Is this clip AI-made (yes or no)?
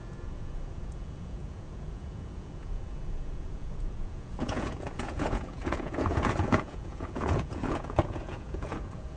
yes